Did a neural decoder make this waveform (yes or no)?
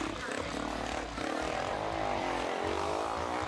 no